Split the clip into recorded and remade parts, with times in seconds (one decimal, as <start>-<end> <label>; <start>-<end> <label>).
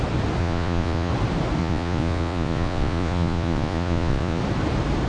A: 0.0-0.4 recorded; 0.4-1.1 remade; 1.1-1.6 recorded; 1.6-4.4 remade; 4.4-5.1 recorded